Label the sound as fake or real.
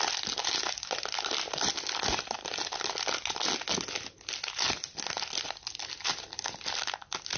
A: real